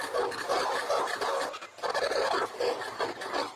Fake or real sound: real